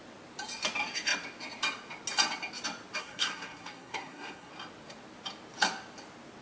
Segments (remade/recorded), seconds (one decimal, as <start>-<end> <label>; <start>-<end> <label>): 0.0-3.0 recorded; 3.0-4.5 remade; 4.5-6.4 recorded